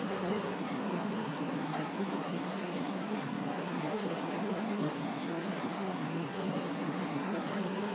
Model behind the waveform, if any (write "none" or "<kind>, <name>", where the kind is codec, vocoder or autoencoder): codec, SNAC